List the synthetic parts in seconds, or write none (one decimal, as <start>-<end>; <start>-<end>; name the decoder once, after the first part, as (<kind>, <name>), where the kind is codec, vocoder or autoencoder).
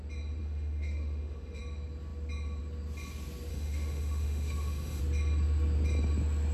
0.4-1.6 (autoencoder, DAC-VAE); 3.5-5.0